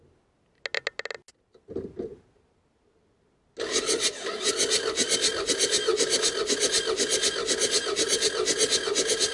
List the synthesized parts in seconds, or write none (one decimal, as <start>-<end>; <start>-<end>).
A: none